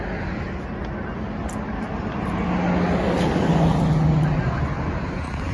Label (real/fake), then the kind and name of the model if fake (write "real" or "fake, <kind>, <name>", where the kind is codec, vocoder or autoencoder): real